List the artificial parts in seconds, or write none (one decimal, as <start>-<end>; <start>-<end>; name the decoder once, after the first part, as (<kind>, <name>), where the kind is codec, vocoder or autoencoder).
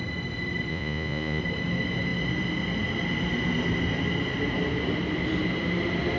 0.7-1.4 (vocoder, Vocos)